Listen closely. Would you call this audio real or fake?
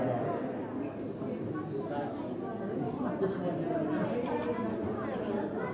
real